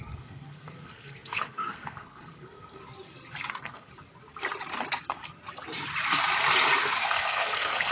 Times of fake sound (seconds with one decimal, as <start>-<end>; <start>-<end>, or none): 0.0-2.8; 3.5-3.9; 6.8-7.9